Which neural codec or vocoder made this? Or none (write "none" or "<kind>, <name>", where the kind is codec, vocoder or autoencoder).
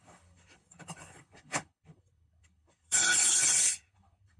codec, HILCodec